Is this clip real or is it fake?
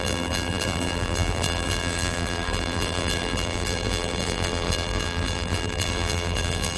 fake